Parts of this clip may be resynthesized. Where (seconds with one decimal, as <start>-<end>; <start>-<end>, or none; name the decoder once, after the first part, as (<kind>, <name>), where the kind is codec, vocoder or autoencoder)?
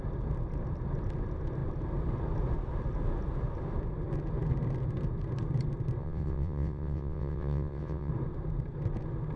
6.0-8.1 (vocoder, WaveNeXt)